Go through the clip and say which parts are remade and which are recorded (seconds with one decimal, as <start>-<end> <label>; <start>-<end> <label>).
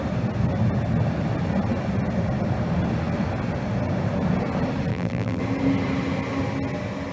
0.0-4.9 recorded; 4.9-5.4 remade; 5.4-7.1 recorded